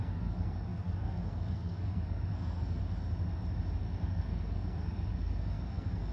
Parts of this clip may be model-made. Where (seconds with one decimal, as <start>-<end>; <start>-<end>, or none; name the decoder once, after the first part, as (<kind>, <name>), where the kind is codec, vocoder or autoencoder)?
0.0-2.8 (codec, SNAC); 3.8-6.1